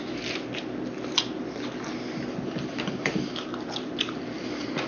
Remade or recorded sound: recorded